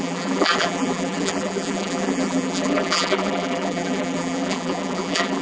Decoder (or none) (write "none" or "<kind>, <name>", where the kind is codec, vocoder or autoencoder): vocoder, BigVGAN v2